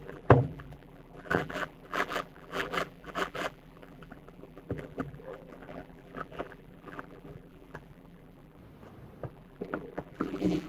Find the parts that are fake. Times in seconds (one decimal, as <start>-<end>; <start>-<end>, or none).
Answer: 0.0-8.6; 9.3-10.7